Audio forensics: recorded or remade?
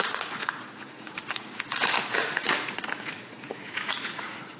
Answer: remade